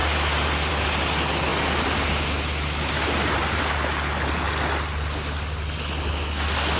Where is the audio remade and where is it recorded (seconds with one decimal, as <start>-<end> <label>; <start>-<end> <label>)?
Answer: 0.0-6.8 recorded